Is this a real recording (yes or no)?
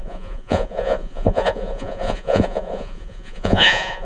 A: no